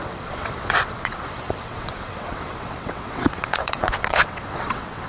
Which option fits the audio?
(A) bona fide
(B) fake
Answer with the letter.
B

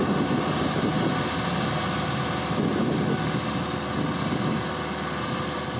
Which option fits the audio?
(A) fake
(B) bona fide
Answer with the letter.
B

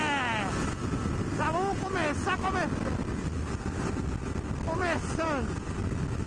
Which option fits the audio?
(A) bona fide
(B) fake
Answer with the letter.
A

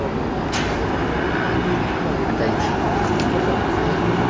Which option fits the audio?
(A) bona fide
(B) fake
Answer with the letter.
A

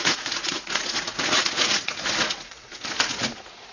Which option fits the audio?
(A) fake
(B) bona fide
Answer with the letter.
A